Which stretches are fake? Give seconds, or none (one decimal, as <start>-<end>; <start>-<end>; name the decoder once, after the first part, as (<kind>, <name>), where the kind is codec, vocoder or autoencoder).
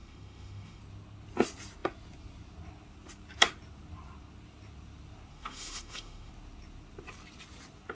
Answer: 0.0-0.8 (autoencoder, DAC-VAE); 5.3-6.3